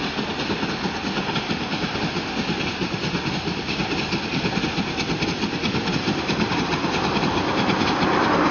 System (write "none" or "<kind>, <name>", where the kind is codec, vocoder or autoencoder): none